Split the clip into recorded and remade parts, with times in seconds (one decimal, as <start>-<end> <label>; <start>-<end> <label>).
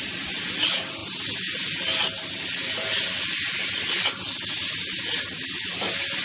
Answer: 0.0-6.2 recorded